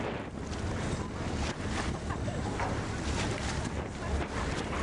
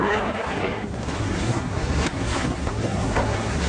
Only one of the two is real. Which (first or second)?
first